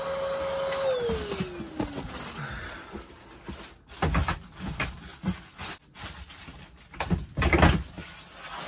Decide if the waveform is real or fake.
real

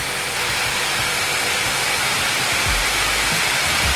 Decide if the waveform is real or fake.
real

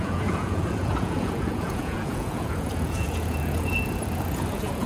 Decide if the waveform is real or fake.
fake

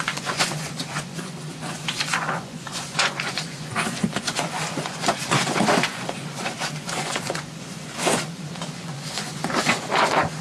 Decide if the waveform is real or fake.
fake